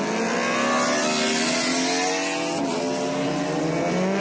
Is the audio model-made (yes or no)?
no